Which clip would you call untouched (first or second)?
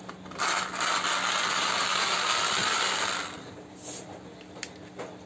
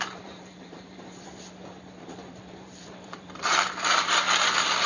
first